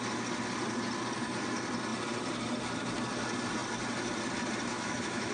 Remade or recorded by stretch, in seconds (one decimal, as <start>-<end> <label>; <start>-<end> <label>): 0.0-4.7 recorded; 4.7-5.3 remade